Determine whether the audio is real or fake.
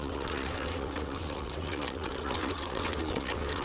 fake